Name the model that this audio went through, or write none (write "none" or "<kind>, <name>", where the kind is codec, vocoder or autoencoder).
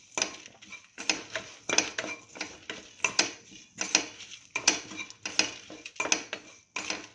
none